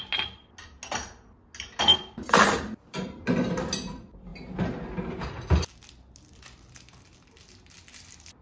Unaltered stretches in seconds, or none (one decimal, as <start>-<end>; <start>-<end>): 0.0-1.9; 3.5-8.4